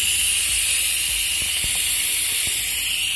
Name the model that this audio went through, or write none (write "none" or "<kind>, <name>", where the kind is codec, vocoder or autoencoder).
none